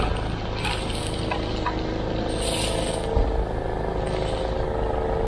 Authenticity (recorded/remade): recorded